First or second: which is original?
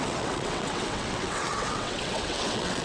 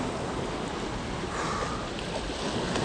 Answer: second